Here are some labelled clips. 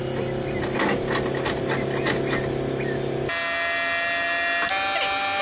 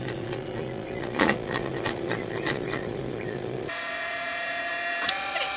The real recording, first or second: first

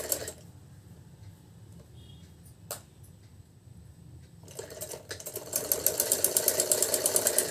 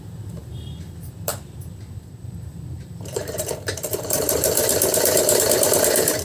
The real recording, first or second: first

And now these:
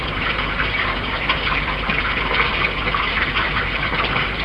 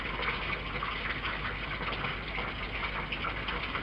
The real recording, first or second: second